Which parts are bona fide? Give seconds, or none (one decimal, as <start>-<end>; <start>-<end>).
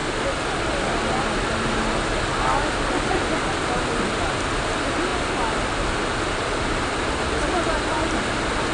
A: 0.0-8.7